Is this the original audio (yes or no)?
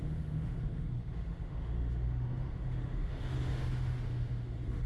no